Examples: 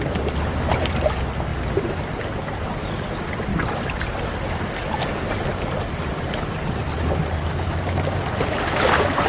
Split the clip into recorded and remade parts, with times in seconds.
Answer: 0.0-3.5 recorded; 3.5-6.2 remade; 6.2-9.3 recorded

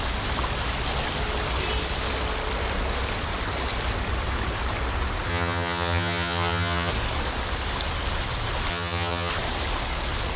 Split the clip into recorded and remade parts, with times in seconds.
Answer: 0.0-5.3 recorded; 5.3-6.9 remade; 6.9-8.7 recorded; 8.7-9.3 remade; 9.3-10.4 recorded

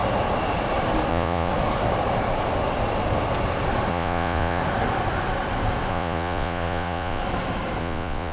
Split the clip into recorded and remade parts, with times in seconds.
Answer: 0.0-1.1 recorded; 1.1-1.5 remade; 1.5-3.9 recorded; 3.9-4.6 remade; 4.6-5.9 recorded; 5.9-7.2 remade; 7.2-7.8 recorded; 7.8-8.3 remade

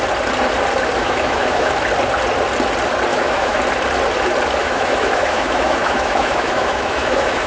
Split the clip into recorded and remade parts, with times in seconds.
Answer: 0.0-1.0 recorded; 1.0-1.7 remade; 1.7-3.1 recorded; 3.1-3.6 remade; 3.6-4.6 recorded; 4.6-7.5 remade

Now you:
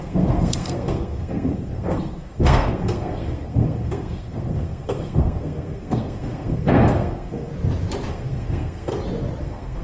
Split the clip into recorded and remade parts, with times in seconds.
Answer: 0.0-7.5 remade; 7.5-8.1 recorded; 8.1-8.9 remade; 8.9-9.4 recorded; 9.4-9.8 remade

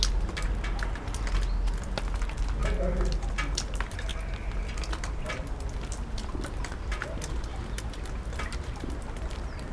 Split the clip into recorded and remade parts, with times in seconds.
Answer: 0.0-9.7 recorded

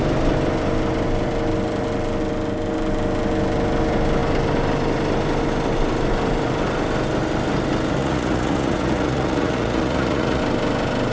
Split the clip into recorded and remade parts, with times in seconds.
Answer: 0.0-8.0 recorded; 8.0-10.4 remade; 10.4-11.1 recorded

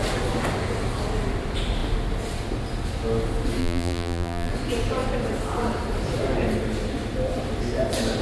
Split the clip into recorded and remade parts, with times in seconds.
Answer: 0.0-3.6 recorded; 3.6-4.5 remade; 4.5-8.2 recorded